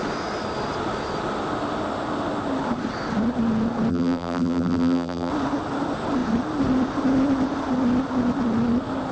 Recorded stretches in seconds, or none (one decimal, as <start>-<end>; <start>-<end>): 0.0-3.9; 5.3-9.1